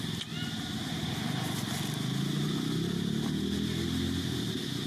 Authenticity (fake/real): real